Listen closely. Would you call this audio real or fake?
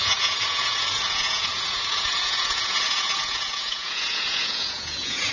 fake